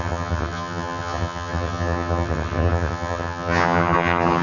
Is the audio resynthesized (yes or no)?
yes